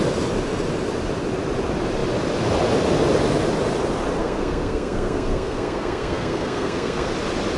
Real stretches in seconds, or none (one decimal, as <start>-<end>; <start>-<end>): 0.0-4.2; 7.1-7.6